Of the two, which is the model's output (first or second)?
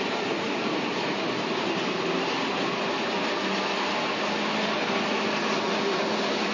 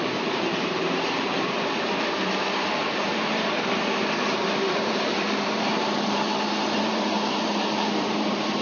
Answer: second